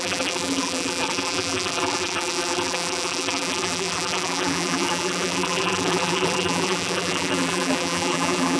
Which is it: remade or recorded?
remade